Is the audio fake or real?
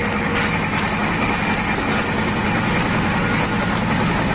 real